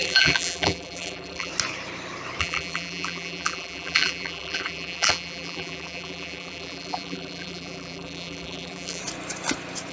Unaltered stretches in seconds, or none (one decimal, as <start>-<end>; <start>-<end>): 1.5-2.4; 9.0-9.9